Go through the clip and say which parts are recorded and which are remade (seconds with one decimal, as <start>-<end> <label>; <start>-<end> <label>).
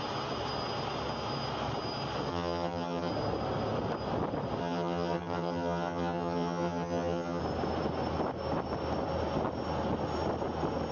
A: 0.0-2.3 recorded; 2.3-3.1 remade; 3.1-4.6 recorded; 4.6-7.4 remade; 7.4-10.9 recorded